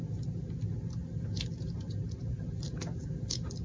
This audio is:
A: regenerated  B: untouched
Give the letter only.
B